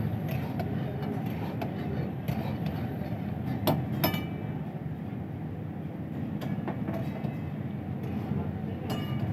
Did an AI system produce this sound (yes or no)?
no